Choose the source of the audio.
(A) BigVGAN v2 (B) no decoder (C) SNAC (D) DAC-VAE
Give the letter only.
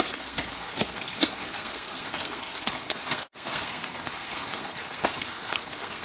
C